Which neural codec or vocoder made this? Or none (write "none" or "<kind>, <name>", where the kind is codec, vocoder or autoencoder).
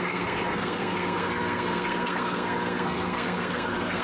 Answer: codec, SNAC